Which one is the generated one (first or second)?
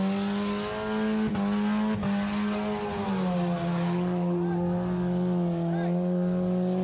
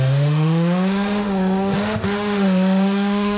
second